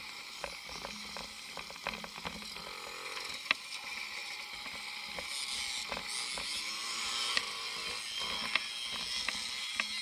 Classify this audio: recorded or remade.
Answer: recorded